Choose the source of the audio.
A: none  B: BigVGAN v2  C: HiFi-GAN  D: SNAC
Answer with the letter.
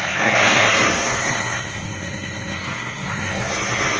D